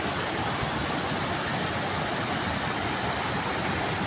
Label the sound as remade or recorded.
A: recorded